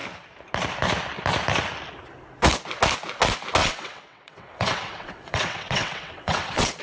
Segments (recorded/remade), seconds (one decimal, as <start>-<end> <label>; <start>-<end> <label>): 0.0-3.6 recorded; 3.6-6.8 remade